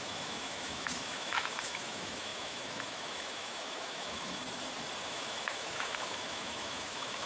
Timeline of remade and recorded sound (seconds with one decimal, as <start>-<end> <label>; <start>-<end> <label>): 0.0-4.4 remade; 4.4-5.0 recorded; 5.0-7.3 remade